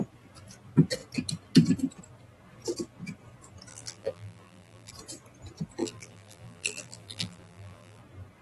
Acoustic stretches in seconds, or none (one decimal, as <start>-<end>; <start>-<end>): 0.0-3.7; 4.9-5.8; 8.0-8.4